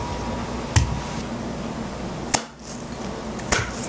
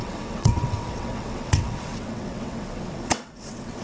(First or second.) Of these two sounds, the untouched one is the first